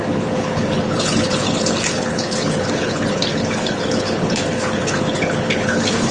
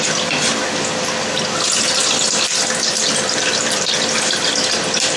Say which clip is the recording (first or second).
second